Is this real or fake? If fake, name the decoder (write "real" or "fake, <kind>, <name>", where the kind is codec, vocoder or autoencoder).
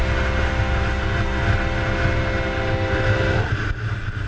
real